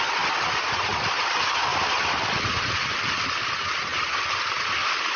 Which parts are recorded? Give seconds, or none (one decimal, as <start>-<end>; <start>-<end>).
0.0-5.2